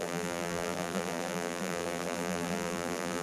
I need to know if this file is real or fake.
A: fake